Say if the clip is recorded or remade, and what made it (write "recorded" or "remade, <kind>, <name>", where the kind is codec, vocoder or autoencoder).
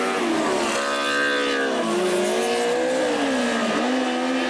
recorded